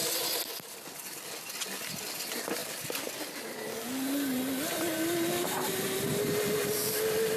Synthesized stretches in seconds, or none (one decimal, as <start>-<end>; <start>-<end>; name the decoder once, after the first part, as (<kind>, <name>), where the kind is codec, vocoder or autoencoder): none